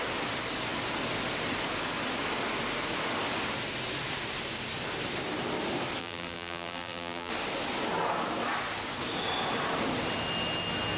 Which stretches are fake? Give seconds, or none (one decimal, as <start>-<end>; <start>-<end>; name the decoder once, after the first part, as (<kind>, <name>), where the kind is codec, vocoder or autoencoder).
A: 6.0-7.3 (vocoder, BigVGAN v2)

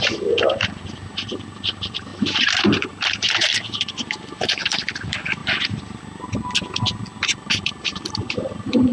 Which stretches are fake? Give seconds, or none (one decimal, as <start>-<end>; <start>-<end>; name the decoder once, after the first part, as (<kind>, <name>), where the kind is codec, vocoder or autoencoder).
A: 0.0-5.4 (vocoder, BigVGAN v2); 7.2-8.9

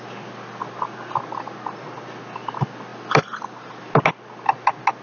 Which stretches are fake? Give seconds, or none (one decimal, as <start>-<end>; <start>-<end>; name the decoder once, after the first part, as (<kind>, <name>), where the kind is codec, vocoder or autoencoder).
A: none

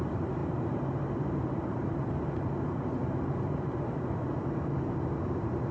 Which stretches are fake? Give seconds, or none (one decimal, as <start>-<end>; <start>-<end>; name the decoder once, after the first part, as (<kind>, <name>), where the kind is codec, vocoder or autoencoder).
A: 0.0-4.3 (vocoder, BigVGAN v2)

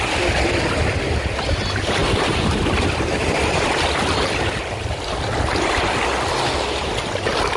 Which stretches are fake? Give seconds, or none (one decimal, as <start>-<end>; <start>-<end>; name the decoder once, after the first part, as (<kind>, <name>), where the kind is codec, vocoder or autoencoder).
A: 2.0-6.0 (vocoder, BigVGAN v2)

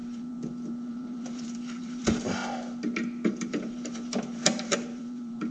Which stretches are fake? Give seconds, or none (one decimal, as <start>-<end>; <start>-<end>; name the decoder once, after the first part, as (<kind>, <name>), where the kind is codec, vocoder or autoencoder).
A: 0.0-2.4 (vocoder, BigVGAN v2); 3.3-5.5

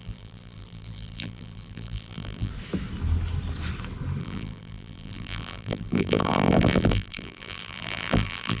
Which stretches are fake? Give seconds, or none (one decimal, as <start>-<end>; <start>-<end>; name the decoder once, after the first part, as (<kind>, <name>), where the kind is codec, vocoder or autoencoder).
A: 0.0-2.5 (vocoder, BigVGAN v2); 4.2-8.6